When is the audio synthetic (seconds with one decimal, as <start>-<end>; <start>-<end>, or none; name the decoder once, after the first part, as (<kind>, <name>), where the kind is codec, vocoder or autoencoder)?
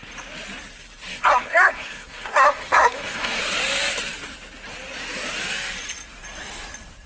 1.1-3.4 (codec, SNAC)